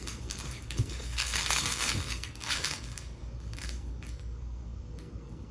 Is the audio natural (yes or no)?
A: no